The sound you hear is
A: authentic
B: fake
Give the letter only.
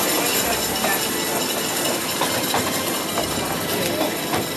A